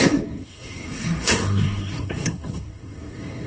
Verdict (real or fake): fake